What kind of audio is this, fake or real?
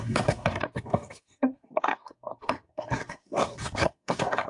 fake